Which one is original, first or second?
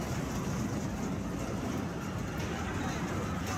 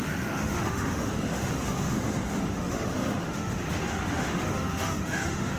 first